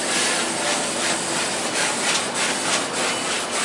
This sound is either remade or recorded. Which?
recorded